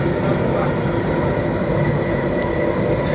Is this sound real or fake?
real